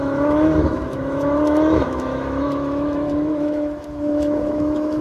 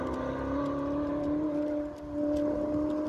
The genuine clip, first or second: second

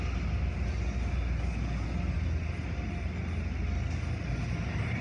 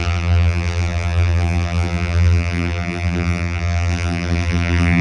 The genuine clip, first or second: first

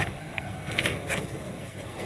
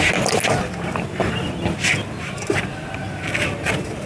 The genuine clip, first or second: second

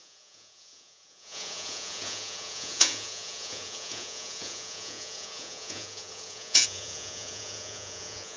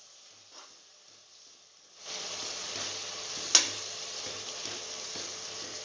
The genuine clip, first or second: second